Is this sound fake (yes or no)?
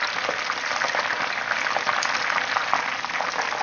no